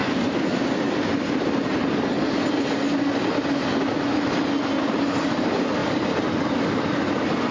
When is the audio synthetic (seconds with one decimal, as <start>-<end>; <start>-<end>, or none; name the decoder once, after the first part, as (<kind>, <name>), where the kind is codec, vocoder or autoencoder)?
5.8-6.4 (vocoder, BigVGAN v2)